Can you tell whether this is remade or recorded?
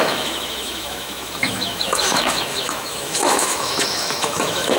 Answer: remade